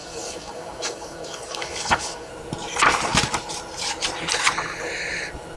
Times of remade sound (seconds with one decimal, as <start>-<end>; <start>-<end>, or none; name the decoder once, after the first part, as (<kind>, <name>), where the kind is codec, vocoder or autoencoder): 0.0-2.3 (codec, DAC)